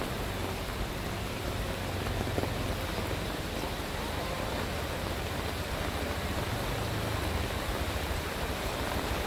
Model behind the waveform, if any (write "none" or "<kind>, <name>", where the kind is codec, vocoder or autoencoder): none